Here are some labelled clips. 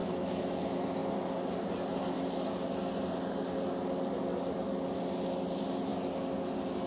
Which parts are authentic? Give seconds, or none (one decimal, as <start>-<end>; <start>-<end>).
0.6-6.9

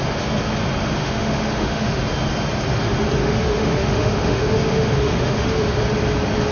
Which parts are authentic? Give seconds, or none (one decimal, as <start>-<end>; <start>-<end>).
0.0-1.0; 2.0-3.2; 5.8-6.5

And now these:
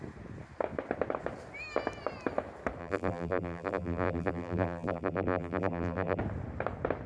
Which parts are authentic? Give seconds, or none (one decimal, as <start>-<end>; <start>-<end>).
0.0-2.8; 6.2-7.1

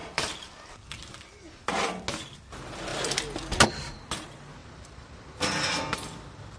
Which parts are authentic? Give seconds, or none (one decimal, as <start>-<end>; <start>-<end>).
1.7-4.6; 5.2-6.6

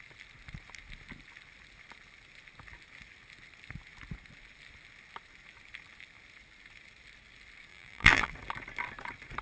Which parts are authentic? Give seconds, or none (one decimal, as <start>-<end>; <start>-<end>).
0.0-7.7; 8.3-9.4

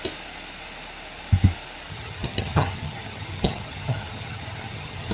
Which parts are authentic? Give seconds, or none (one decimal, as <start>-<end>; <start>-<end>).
0.0-1.9

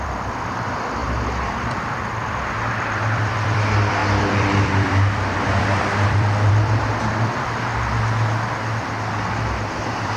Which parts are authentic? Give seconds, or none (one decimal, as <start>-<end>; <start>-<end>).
7.7-9.7